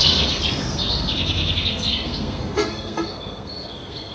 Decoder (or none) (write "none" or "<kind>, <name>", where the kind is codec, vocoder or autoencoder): codec, SNAC